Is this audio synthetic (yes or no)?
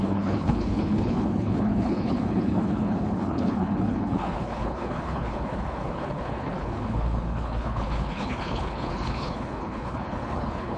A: yes